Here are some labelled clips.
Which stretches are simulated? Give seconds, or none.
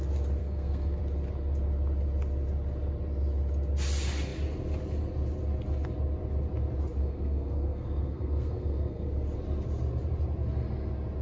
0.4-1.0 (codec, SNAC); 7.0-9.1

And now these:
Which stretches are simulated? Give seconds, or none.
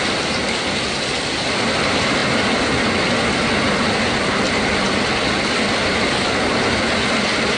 none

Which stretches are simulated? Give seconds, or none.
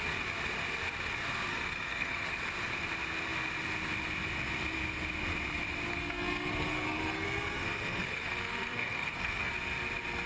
1.5-2.3 (codec, SNAC); 5.9-9.5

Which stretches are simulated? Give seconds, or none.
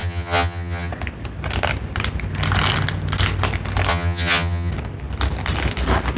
0.0-0.9 (vocoder, HiFi-GAN); 3.9-4.7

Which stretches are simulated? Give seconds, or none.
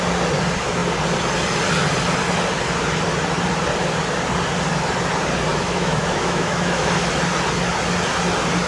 5.5-6.9 (autoencoder, DAC-VAE)